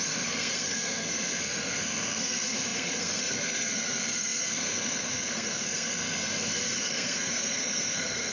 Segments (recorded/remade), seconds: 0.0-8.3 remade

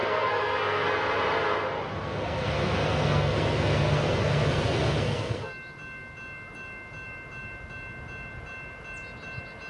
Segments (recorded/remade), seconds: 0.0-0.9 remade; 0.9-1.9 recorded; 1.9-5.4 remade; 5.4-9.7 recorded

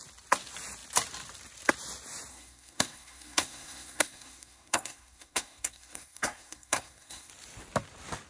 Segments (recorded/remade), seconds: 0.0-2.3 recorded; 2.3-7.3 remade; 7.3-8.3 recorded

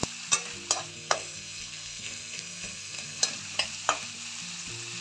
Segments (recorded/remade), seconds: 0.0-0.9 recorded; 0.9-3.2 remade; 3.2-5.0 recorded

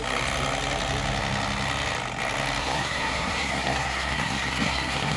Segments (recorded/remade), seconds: 0.0-2.6 recorded; 2.6-5.2 remade